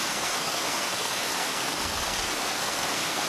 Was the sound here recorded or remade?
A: remade